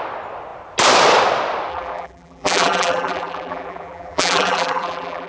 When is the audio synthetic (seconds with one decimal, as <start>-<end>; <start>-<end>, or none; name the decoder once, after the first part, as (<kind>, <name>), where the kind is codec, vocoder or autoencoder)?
1.7-5.3 (vocoder, BigVGAN v2)